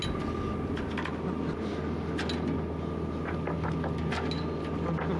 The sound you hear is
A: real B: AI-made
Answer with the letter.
A